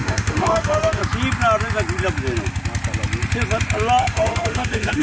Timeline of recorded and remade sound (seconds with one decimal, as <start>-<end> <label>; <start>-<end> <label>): 0.0-1.0 remade; 1.0-4.0 recorded; 4.0-5.0 remade